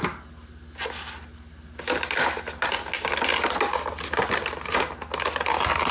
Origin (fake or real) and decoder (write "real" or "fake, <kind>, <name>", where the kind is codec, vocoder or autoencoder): real